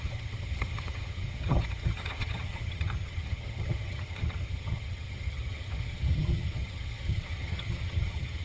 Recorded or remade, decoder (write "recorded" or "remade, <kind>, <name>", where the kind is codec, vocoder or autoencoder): remade, vocoder, HiFi-GAN